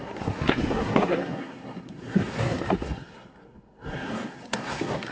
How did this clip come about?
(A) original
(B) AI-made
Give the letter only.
B